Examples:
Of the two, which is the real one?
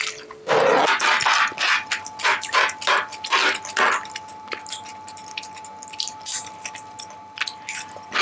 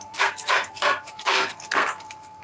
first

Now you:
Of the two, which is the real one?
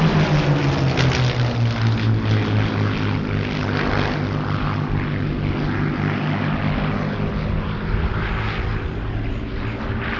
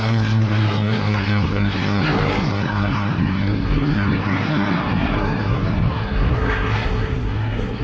first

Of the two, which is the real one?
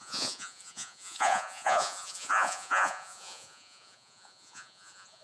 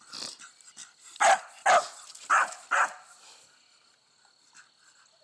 second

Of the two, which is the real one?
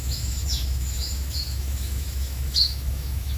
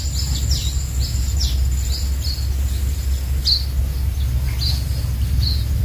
second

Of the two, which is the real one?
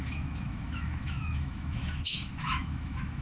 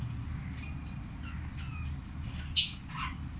second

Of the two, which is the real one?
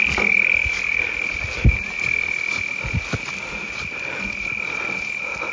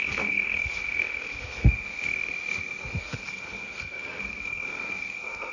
first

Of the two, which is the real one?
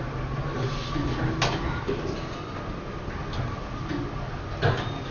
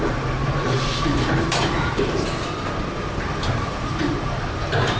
first